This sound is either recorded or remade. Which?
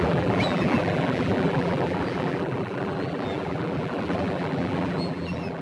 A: remade